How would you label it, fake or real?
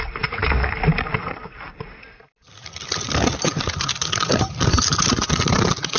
real